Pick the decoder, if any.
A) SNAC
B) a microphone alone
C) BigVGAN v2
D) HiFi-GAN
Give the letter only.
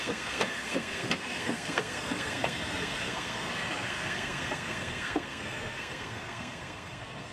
A